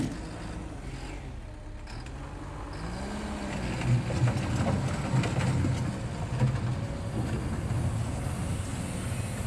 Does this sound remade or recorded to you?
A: recorded